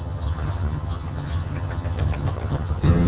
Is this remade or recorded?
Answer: remade